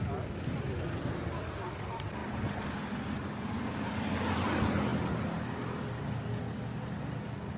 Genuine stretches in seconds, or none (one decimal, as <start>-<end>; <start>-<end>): 0.0-7.6

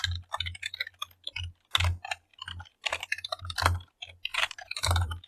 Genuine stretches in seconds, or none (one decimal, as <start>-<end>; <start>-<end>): 0.0-2.3; 3.4-4.3